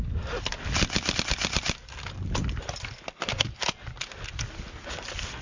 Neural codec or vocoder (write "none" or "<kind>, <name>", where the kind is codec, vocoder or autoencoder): none